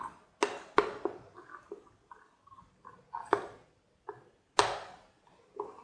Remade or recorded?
recorded